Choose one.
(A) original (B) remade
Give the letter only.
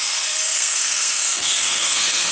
B